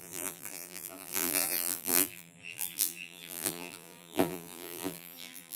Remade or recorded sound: remade